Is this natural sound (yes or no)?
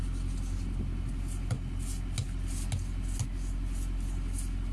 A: yes